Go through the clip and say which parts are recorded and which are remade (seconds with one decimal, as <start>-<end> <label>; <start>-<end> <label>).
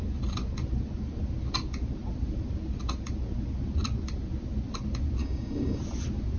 0.0-5.2 recorded; 5.2-5.8 remade; 5.8-6.4 recorded